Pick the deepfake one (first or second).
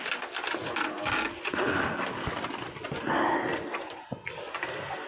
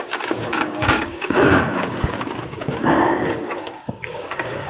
second